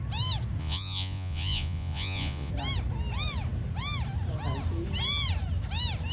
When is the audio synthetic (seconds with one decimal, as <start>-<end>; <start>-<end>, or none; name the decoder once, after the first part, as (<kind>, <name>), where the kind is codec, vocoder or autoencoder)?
0.6-2.5 (vocoder, Vocos)